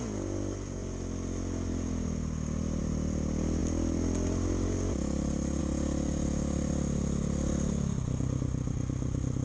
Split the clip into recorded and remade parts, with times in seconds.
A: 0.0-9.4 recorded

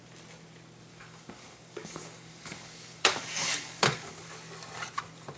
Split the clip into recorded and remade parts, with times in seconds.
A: 0.0-0.9 recorded; 0.9-4.1 remade; 4.1-5.4 recorded